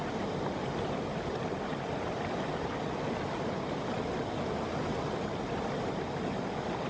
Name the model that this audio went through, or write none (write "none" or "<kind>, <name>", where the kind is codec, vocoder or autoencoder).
none